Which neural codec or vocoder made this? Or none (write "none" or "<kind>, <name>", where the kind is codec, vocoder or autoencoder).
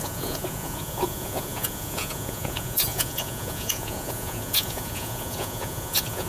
vocoder, Vocos